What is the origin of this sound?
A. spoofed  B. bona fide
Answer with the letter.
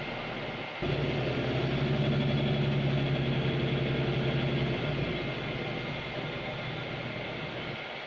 B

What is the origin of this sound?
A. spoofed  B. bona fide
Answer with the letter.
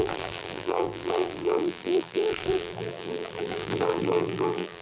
A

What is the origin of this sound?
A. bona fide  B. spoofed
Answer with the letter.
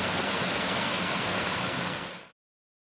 B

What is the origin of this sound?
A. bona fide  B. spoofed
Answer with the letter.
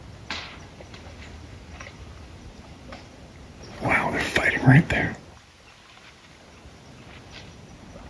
A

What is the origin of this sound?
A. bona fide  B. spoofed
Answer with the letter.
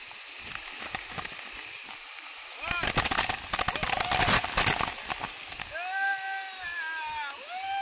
A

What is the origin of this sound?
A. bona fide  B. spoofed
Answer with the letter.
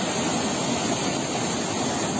A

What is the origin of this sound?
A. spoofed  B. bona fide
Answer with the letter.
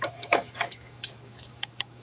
A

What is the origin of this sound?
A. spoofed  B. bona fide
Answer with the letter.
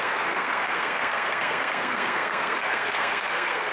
A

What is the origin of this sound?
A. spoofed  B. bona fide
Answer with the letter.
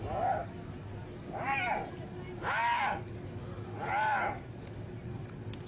B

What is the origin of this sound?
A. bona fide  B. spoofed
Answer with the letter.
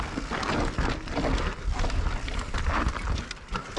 A